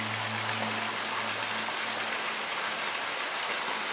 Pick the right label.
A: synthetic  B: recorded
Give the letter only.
B